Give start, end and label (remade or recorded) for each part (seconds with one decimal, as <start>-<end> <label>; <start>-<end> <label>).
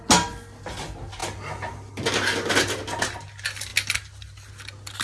0.0-5.0 recorded